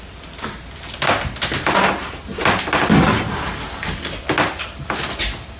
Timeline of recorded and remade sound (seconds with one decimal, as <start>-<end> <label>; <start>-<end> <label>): 0.0-5.6 recorded